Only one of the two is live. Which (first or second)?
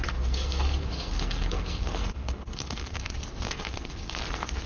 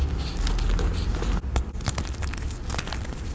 second